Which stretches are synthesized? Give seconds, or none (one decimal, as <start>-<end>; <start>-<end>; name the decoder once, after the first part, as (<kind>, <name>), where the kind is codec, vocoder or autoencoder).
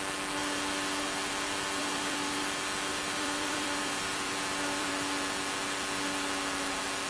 1.8-2.4 (vocoder, BigVGAN v2); 2.9-4.9